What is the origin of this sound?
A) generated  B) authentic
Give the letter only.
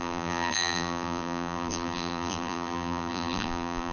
A